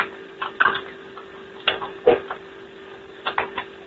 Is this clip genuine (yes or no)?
yes